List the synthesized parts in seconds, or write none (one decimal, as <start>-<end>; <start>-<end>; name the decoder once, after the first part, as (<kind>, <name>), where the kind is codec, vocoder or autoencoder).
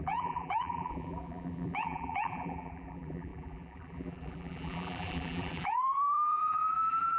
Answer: 0.0-7.2 (vocoder, BigVGAN v2)